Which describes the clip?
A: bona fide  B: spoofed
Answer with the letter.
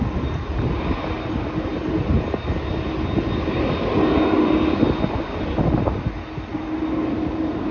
A